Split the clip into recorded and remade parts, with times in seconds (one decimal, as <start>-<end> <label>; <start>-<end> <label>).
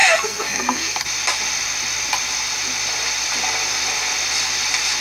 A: 0.0-1.0 remade; 1.0-5.0 recorded